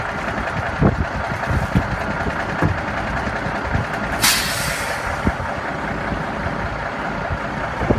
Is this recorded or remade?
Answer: recorded